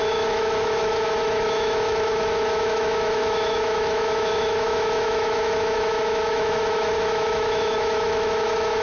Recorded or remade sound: remade